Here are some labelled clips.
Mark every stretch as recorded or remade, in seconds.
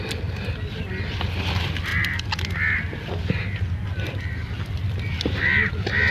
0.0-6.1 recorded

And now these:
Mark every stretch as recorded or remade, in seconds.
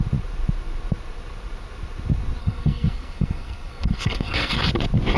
0.0-2.4 recorded; 2.4-4.7 remade; 4.7-5.2 recorded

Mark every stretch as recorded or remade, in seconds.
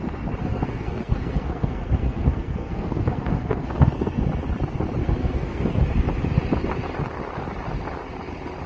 0.0-0.4 recorded; 0.4-4.2 remade; 4.2-5.0 recorded; 5.0-5.8 remade; 5.8-8.7 recorded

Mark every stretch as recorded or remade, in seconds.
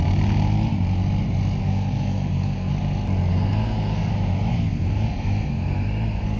0.0-1.6 recorded; 1.6-2.7 remade; 2.7-3.3 recorded; 3.3-4.1 remade; 4.1-4.5 recorded; 4.5-6.4 remade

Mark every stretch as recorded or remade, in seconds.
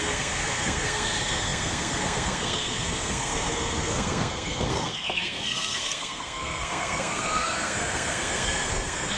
0.0-9.2 remade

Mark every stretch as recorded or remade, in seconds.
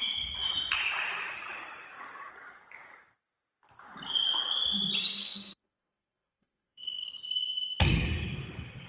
0.0-5.2 recorded; 5.2-7.2 remade; 7.2-8.9 recorded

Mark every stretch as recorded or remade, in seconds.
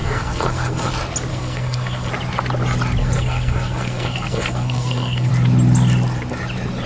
0.0-0.9 remade; 0.9-1.3 recorded; 1.3-2.1 remade; 2.1-3.0 recorded; 3.0-5.3 remade; 5.3-6.9 recorded